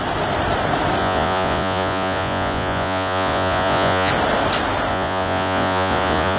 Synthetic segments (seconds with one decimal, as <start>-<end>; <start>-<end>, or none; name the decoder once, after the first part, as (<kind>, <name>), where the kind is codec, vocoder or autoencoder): 1.0-4.1 (vocoder, Vocos); 4.9-6.4